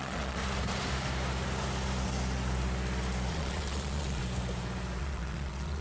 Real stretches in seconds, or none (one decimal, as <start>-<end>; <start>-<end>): 0.4-3.3; 4.2-5.0